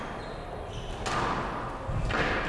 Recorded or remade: recorded